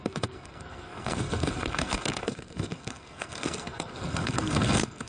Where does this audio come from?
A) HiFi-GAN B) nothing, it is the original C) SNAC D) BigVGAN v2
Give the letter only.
C